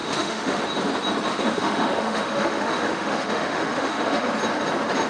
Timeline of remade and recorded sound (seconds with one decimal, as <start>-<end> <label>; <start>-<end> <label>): 0.0-0.6 remade; 0.6-1.3 recorded; 1.3-4.3 remade; 4.3-5.1 recorded